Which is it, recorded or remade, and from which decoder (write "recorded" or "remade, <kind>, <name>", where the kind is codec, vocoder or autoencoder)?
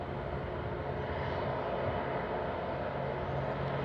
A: recorded